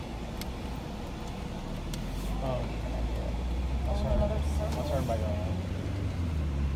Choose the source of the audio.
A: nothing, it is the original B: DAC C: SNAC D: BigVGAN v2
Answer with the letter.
A